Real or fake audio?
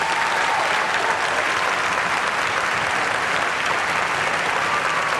real